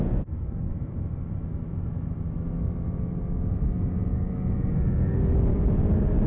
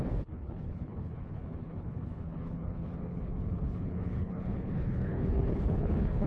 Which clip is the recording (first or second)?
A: first